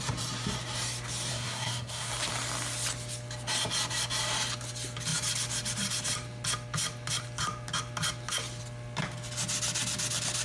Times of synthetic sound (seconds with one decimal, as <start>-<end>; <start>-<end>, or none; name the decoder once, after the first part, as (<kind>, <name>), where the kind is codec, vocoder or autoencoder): 1.3-2.1 (codec, SNAC)